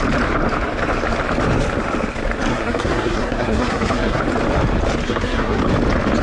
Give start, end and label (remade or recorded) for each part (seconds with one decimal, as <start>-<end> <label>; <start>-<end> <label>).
0.0-2.5 recorded; 2.5-4.2 remade; 4.2-5.1 recorded; 5.1-5.6 remade; 5.6-6.2 recorded